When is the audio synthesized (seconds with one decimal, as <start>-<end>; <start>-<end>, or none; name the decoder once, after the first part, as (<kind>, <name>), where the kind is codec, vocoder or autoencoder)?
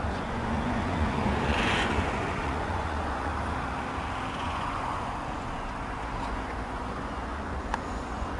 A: 0.0-3.3 (vocoder, Vocos); 4.3-8.4